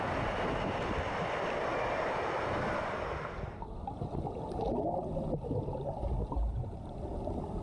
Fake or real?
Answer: real